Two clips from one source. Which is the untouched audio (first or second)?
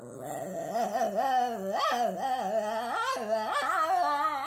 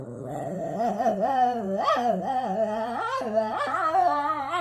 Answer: first